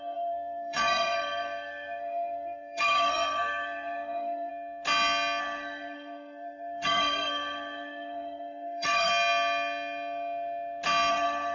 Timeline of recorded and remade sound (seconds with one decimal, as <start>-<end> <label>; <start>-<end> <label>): 0.0-4.5 remade; 4.5-5.4 recorded; 5.4-9.1 remade; 9.1-11.1 recorded; 11.1-11.5 remade